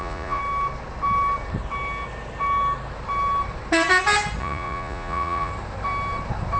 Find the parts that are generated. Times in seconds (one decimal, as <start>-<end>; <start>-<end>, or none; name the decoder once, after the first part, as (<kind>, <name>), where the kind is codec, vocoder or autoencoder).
0.0-0.4 (vocoder, Vocos); 4.4-5.5